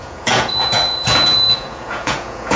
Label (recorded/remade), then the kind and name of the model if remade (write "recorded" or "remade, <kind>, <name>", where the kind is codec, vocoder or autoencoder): remade, vocoder, Vocos